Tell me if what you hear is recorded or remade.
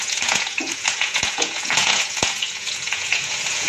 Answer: remade